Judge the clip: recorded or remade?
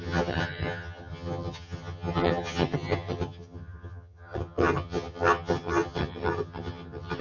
remade